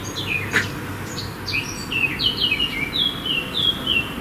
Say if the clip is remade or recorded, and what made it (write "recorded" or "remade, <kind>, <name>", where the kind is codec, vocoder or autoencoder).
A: recorded